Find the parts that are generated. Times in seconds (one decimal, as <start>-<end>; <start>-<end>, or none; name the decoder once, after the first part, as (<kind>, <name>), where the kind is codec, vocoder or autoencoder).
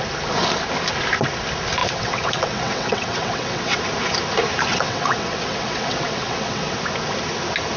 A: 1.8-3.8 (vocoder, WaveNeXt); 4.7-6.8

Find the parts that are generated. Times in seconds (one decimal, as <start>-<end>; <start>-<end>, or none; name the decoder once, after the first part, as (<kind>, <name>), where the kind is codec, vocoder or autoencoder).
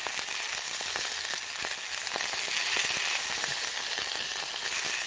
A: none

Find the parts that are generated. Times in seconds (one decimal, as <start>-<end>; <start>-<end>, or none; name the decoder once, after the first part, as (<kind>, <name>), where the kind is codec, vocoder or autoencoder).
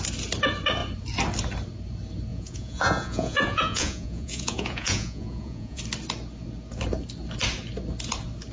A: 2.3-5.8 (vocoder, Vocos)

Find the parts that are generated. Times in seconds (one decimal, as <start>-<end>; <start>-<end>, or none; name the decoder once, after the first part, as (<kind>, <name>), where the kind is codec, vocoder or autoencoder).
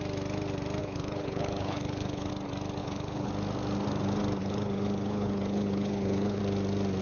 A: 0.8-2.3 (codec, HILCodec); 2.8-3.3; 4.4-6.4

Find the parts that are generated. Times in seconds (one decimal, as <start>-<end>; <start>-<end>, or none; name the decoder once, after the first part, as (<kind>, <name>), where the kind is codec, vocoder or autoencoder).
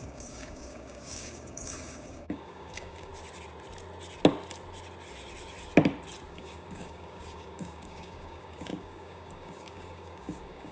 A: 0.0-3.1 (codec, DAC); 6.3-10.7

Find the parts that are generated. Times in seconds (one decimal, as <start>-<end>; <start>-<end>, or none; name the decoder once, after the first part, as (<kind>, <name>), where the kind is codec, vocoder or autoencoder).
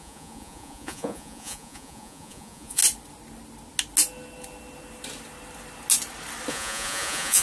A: 0.0-2.8 (vocoder, Vocos); 6.5-7.4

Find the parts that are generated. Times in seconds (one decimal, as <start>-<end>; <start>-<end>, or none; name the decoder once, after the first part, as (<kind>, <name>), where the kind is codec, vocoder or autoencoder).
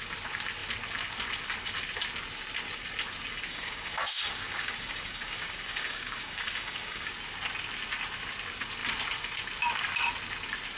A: 3.5-7.1 (codec, DAC)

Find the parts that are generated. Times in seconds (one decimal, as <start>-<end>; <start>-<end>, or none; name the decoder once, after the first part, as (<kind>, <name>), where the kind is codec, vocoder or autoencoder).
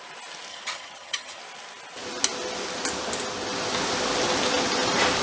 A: 0.5-1.4 (vocoder, HiFi-GAN)